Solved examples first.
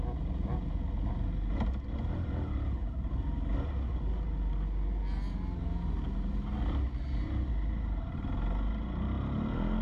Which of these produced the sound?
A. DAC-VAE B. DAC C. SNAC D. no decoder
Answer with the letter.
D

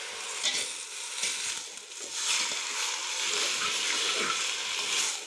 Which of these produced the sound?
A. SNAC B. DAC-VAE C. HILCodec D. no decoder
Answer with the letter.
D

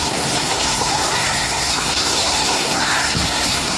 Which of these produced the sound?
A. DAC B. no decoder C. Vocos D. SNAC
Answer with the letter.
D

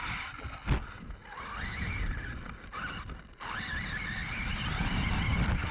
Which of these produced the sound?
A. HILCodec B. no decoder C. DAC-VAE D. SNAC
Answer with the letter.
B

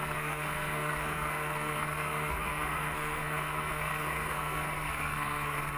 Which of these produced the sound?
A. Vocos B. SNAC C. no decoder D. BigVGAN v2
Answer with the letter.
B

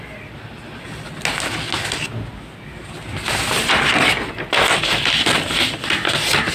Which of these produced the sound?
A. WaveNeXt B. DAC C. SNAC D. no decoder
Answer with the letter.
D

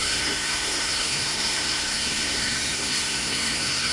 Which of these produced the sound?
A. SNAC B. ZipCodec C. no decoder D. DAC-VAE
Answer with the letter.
A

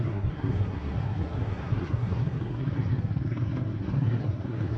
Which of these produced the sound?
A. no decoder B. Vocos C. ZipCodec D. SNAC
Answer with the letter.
D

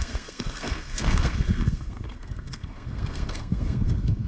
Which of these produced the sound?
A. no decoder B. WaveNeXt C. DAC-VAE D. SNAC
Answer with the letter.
D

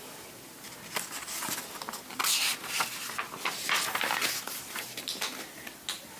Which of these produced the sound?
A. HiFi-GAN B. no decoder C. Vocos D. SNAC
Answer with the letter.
B